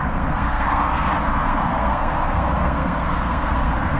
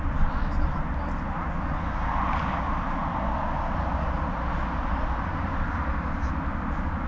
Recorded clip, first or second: second